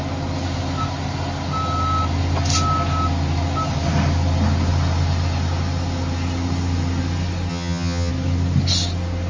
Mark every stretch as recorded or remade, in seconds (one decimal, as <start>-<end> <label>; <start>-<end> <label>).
0.0-7.5 recorded; 7.5-8.1 remade; 8.1-9.3 recorded